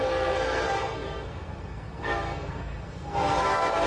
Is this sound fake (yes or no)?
yes